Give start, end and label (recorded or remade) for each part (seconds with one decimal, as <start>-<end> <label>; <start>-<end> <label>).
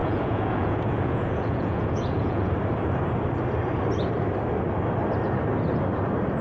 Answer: 0.0-2.5 remade; 2.5-6.4 recorded